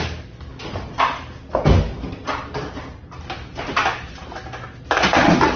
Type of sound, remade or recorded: recorded